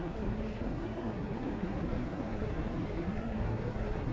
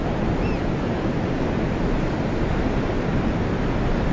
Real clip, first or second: second